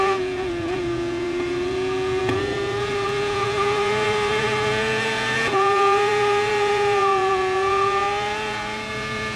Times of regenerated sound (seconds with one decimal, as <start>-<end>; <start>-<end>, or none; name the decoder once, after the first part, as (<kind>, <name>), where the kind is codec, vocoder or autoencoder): 0.0-9.4 (vocoder, Vocos)